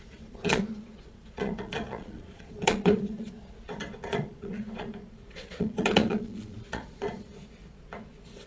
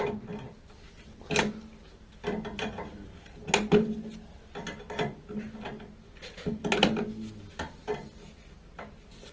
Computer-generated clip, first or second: first